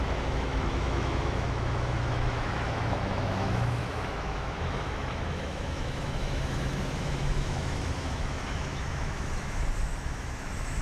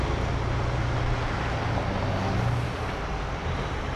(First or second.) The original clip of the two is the second